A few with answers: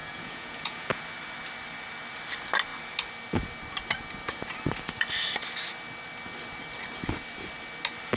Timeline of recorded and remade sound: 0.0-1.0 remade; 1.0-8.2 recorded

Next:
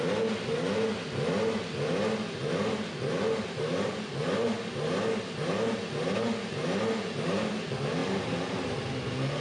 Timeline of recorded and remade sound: 0.0-9.4 recorded

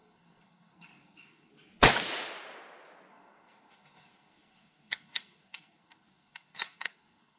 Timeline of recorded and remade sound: 0.0-1.5 remade; 1.5-3.1 recorded; 3.1-7.4 remade

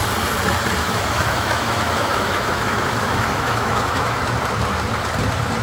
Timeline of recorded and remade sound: 0.0-0.8 recorded; 0.8-4.2 remade; 4.2-5.6 recorded

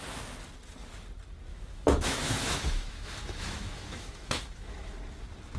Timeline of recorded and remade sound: 0.0-1.5 recorded; 1.5-4.9 remade; 4.9-5.6 recorded

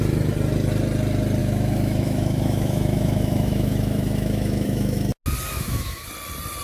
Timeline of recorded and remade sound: 0.0-1.4 recorded; 1.4-5.1 remade; 5.1-5.5 recorded; 5.5-6.1 remade; 6.1-6.6 recorded

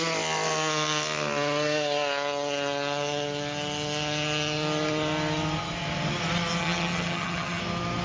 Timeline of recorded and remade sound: 0.0-6.6 recorded; 6.6-7.6 remade; 7.6-8.0 recorded

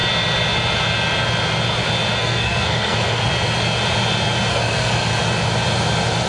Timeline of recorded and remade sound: 0.0-2.2 recorded; 2.2-3.3 remade; 3.3-4.5 recorded; 4.5-5.1 remade; 5.1-6.3 recorded